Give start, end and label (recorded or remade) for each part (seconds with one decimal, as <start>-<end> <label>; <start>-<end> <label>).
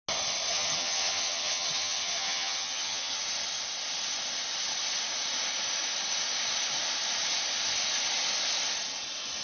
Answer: 0.0-0.5 recorded; 0.5-3.2 remade; 3.2-9.4 recorded